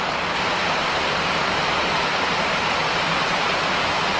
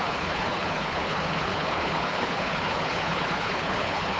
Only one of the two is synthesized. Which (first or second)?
second